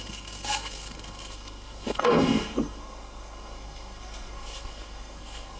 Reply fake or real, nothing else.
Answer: fake